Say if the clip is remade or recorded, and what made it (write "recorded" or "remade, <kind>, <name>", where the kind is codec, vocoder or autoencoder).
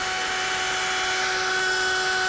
recorded